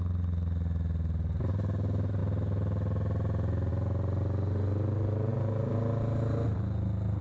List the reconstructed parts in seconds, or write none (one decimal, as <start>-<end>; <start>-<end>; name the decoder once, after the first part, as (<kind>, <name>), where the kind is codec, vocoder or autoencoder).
none